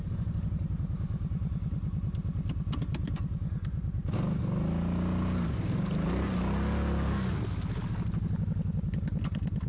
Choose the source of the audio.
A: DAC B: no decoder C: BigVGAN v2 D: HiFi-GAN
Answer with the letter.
B